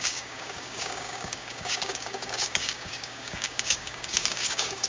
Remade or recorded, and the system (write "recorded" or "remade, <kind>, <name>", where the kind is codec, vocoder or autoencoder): remade, codec, DAC